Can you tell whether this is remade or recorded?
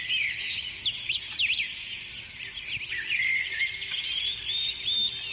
recorded